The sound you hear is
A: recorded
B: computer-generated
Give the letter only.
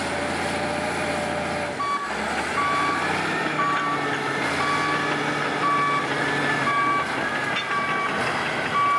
A